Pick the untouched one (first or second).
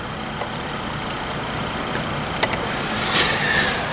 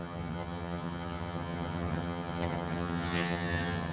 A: first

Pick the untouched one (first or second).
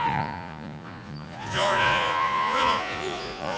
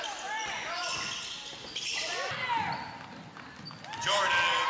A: second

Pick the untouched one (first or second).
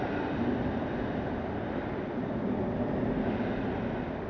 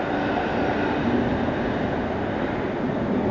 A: second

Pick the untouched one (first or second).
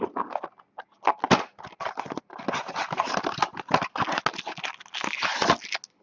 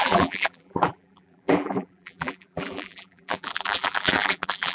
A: first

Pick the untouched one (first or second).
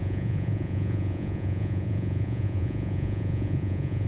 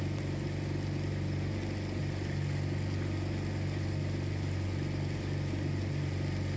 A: second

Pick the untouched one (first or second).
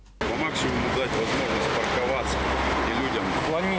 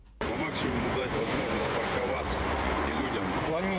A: first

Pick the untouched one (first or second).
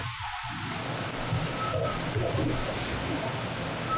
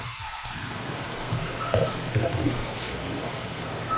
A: first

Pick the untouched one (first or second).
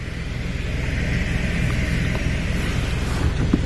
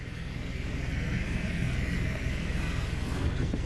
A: first